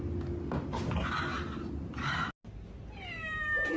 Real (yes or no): yes